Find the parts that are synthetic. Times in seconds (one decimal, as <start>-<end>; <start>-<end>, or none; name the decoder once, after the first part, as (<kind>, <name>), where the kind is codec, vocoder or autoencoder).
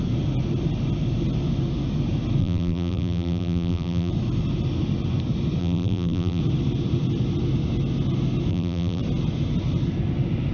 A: 2.4-4.1 (vocoder, BigVGAN v2); 5.6-6.4; 8.5-9.0